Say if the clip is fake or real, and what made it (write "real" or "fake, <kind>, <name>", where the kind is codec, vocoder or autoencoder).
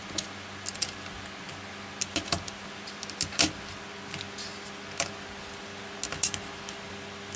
real